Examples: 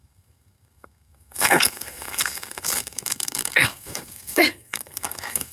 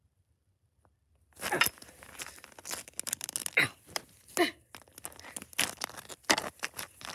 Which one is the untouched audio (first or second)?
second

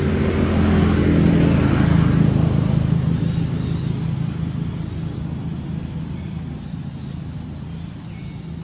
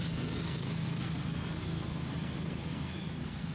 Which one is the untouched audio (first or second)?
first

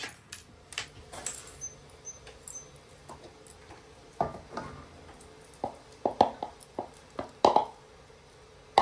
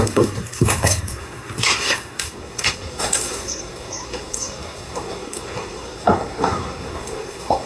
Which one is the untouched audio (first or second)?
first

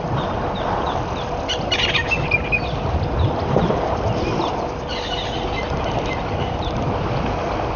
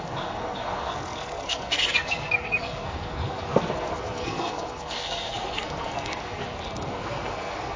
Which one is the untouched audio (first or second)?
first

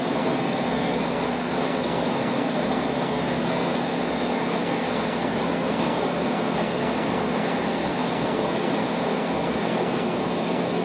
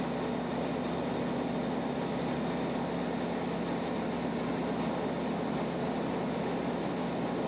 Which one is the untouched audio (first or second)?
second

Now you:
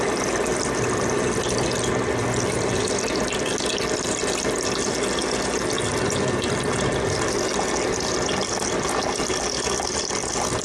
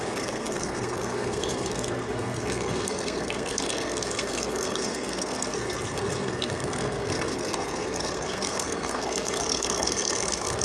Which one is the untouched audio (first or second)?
first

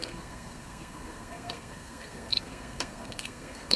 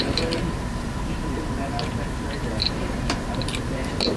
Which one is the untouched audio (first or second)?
second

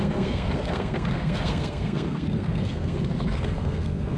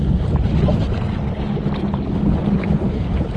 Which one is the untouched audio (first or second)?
second